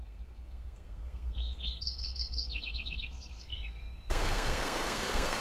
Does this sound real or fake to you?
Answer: fake